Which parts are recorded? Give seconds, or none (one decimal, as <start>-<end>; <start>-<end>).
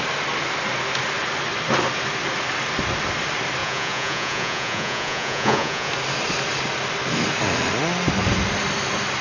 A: 0.0-3.6; 5.9-9.2